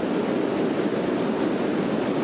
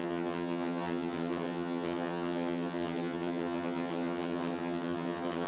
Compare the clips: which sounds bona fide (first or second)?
first